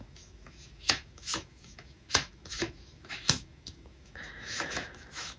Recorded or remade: remade